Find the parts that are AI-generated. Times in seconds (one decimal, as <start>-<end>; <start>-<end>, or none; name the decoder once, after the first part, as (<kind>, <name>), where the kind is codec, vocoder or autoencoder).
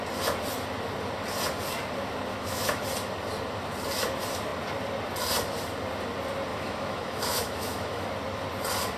2.3-2.8 (autoencoder, DAC-VAE); 6.5-8.1